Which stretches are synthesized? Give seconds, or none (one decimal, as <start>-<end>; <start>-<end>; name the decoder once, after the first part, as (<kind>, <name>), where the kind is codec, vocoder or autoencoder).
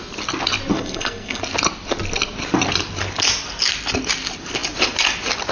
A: 0.7-1.4 (codec, SNAC)